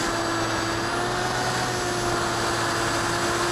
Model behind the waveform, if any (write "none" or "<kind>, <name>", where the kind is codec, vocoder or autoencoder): none